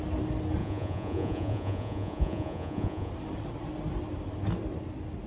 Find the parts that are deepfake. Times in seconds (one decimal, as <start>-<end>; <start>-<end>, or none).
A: 0.6-3.1